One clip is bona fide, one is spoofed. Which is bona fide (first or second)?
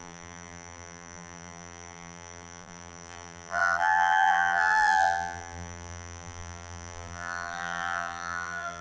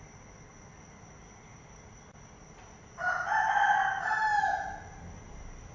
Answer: second